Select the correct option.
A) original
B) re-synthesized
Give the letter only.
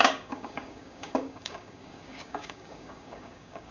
B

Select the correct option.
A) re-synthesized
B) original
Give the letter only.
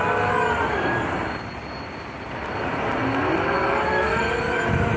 B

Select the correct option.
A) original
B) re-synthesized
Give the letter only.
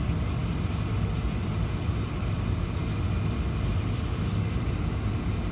A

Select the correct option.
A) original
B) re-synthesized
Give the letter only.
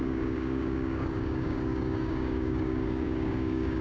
B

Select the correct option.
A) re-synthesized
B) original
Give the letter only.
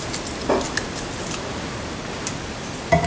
B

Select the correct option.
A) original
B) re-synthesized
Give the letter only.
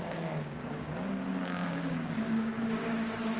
B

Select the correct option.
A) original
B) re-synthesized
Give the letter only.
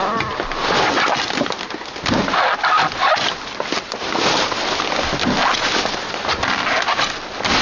A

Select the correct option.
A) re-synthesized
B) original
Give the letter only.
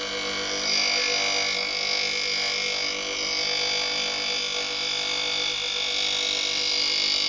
B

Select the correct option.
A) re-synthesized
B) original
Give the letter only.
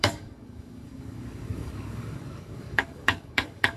A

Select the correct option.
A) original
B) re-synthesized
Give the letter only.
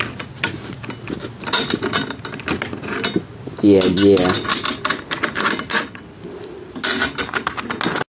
A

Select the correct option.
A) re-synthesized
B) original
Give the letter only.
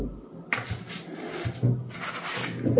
B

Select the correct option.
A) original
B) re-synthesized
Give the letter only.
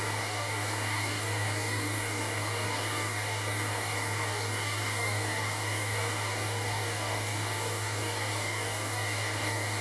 B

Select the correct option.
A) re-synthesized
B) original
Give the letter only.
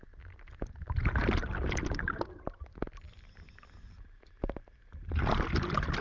B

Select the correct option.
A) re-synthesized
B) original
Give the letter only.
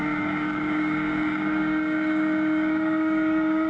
A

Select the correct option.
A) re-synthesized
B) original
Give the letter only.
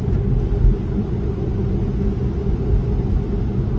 B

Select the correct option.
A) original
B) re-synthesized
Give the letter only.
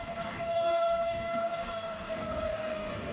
B